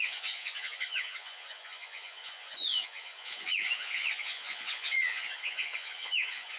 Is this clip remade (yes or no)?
yes